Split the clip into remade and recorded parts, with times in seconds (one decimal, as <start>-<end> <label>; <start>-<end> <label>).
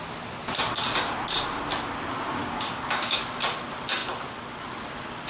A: 0.0-2.4 recorded; 2.4-3.2 remade; 3.2-5.3 recorded